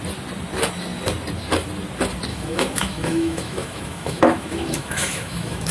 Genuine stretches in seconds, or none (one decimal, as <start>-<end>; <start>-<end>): 0.0-2.3